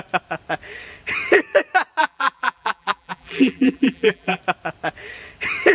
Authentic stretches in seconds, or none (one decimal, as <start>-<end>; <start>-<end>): 0.0-2.0; 4.4-5.7